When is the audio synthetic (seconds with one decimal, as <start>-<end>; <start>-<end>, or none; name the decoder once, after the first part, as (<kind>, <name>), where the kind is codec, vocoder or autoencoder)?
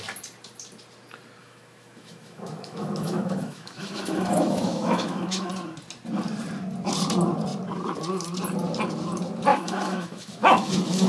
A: 1.4-5.5 (autoencoder, DAC-VAE); 9.5-11.1